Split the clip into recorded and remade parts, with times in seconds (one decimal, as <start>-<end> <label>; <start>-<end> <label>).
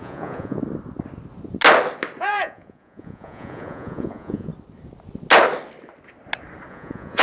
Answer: 0.0-0.6 remade; 0.6-2.2 recorded; 2.2-4.5 remade; 4.5-6.7 recorded; 6.7-7.2 remade